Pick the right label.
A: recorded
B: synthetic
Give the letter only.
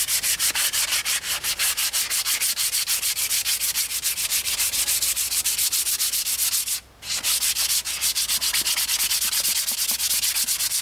A